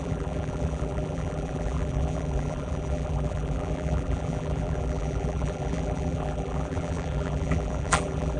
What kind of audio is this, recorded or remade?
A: remade